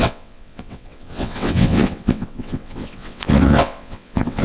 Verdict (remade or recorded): remade